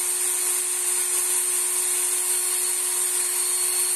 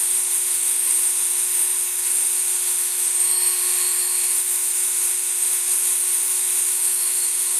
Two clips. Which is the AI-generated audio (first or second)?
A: second